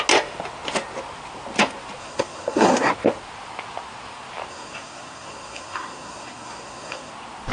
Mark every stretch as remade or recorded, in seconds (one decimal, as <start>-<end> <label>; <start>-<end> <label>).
0.0-2.0 recorded; 2.0-2.9 remade; 2.9-4.5 recorded; 4.5-7.1 remade; 7.1-7.5 recorded